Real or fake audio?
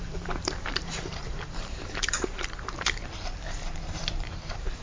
fake